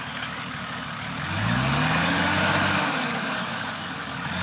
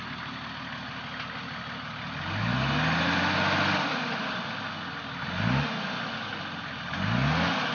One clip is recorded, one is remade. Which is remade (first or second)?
first